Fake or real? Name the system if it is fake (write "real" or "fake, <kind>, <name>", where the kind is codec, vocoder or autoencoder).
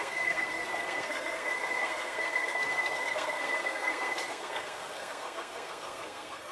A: fake, codec, SNAC